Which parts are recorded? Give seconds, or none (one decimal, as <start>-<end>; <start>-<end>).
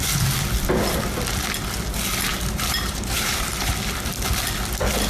0.0-2.3; 3.7-5.1